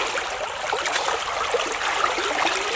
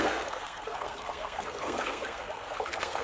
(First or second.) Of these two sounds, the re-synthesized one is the second